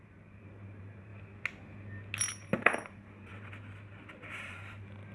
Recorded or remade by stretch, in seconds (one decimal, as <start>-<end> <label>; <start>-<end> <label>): 0.0-1.1 remade; 1.1-2.2 recorded; 2.2-3.3 remade; 3.3-4.3 recorded; 4.3-5.1 remade